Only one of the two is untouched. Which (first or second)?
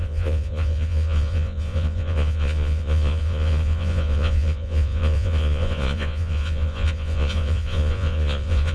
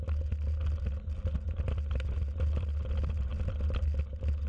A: second